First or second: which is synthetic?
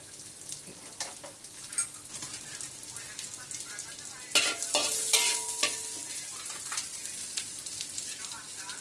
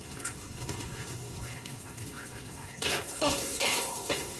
second